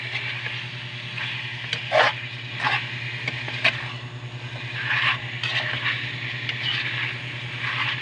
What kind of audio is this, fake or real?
real